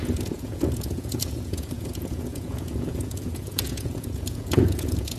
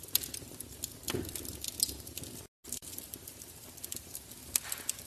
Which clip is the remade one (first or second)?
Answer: first